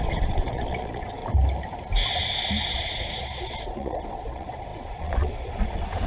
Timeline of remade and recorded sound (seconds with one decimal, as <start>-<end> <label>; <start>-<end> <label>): 0.0-1.2 remade; 1.2-2.7 recorded; 2.7-6.1 remade